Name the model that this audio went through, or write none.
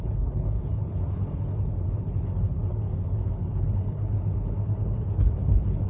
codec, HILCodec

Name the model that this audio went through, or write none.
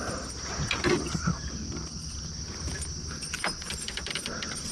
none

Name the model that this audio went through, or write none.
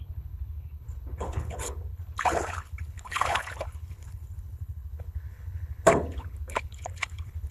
codec, HILCodec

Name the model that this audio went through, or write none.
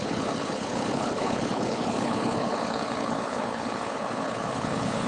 codec, HILCodec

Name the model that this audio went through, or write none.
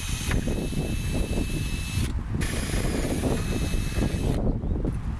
none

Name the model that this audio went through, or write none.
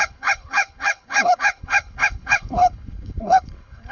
codec, HILCodec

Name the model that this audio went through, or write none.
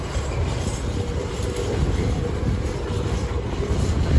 none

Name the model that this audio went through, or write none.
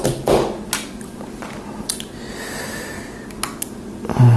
none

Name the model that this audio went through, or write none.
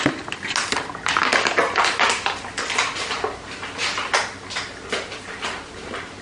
none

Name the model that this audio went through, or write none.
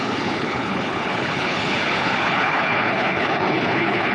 codec, HILCodec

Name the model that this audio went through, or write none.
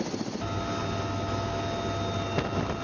none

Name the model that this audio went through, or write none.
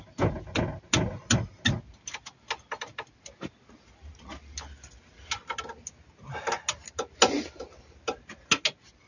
none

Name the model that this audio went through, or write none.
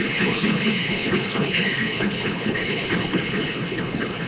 codec, HILCodec